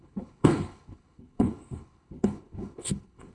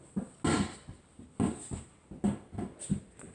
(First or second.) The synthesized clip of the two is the first